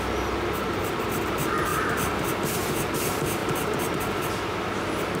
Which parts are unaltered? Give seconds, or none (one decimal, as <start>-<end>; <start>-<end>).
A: 0.0-1.7; 2.3-3.4; 3.9-5.2